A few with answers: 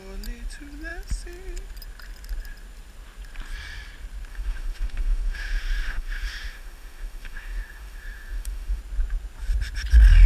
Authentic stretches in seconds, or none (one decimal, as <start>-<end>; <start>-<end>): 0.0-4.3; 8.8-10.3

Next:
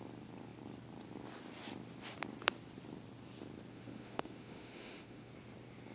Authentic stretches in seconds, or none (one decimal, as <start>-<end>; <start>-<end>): 0.0-3.7; 5.3-5.9

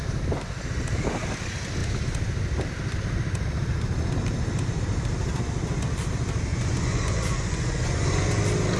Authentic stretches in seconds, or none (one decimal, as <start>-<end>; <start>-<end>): 0.0-6.5; 8.4-8.8

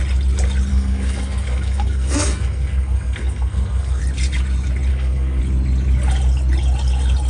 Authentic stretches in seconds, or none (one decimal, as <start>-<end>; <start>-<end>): 0.0-0.7; 4.0-4.9; 5.4-7.3

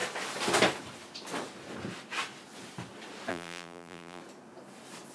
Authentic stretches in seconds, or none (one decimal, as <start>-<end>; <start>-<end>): 0.0-3.3; 4.2-5.1